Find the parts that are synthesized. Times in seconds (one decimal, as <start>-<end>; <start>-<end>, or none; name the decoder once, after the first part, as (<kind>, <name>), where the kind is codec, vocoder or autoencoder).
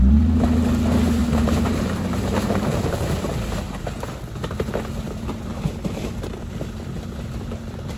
1.2-4.2 (vocoder, BigVGAN v2); 5.5-6.5